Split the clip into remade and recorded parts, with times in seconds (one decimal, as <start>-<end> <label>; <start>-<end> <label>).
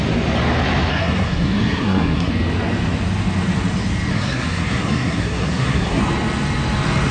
0.0-0.9 recorded; 0.9-2.3 remade; 2.3-4.1 recorded; 4.1-6.0 remade; 6.0-7.1 recorded